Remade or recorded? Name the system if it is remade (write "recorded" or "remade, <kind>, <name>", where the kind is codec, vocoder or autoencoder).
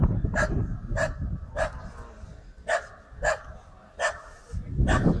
recorded